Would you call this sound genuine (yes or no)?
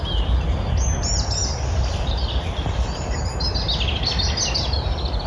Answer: yes